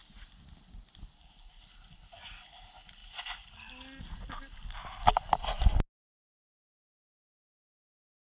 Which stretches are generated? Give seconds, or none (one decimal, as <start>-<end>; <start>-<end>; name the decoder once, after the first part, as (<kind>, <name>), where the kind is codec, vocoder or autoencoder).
none